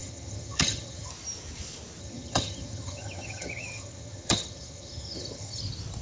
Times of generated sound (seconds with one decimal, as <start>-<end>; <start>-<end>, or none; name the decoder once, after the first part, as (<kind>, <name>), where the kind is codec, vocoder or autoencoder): 0.0-1.1 (vocoder, HiFi-GAN); 2.0-5.6